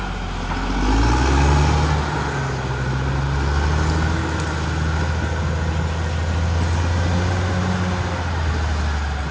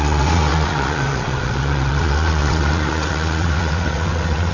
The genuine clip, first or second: first